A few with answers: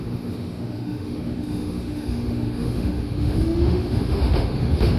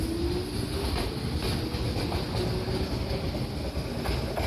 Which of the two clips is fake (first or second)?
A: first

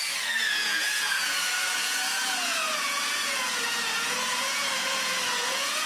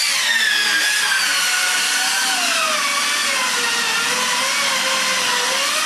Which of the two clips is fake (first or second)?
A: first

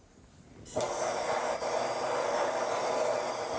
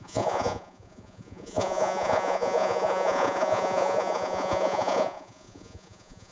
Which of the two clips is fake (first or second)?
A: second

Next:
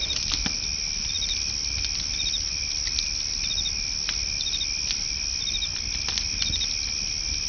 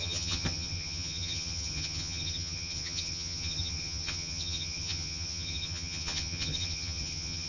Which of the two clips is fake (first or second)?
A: second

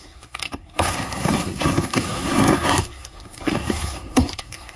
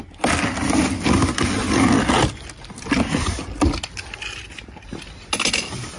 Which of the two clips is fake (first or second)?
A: first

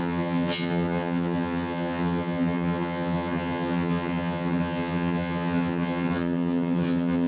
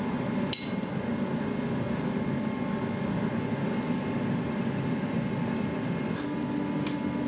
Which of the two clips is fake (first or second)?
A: first